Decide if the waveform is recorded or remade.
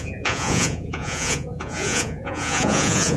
remade